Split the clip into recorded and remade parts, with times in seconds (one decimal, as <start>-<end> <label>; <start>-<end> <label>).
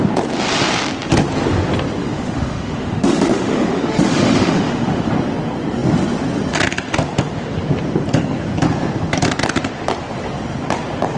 0.0-2.0 recorded; 2.0-5.1 remade; 5.1-11.2 recorded